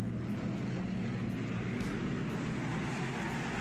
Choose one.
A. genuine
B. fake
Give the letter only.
A